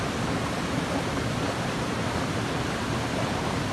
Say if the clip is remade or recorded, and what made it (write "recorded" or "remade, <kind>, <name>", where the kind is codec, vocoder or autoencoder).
recorded